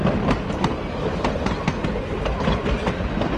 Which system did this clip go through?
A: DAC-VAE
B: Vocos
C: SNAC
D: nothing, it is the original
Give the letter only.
D